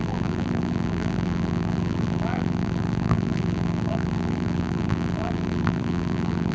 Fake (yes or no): yes